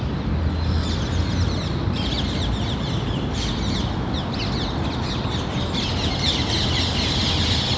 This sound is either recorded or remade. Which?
recorded